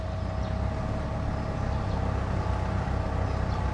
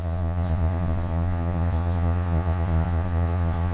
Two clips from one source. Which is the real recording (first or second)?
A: first